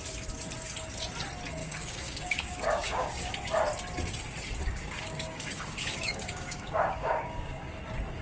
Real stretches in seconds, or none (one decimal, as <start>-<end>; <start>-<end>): 0.0-1.6; 3.3-4.6; 7.7-8.2